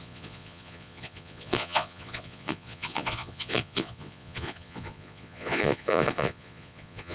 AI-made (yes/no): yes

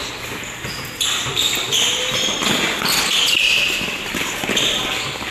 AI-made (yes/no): no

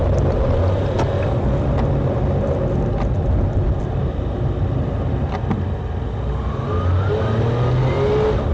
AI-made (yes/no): no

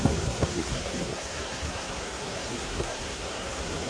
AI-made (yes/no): yes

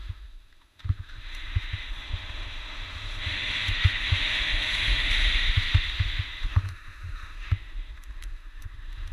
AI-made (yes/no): yes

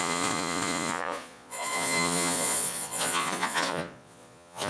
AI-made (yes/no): yes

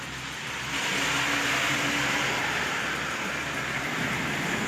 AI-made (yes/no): no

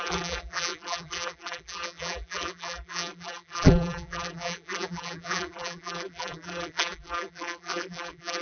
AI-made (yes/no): yes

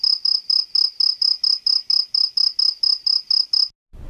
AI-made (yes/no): no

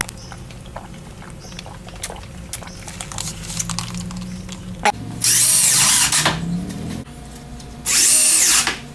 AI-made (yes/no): no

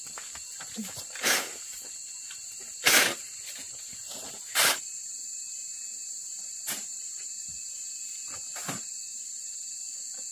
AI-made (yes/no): yes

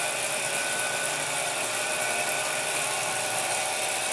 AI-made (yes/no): no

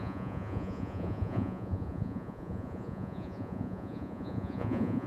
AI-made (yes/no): yes